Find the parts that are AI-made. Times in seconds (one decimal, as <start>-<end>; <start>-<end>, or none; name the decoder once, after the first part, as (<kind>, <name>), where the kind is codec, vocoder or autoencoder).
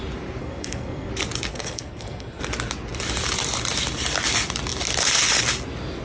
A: 0.4-1.1 (codec, SNAC); 1.5-2.4